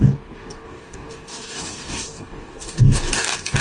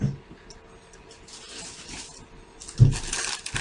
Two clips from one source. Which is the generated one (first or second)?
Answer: first